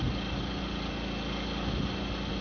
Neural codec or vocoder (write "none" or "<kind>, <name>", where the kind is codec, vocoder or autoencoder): none